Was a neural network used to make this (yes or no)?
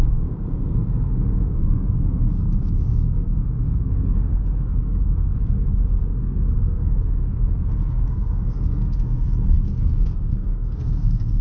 yes